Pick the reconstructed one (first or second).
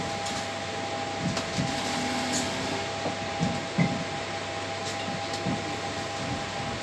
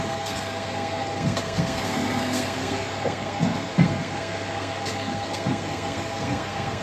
second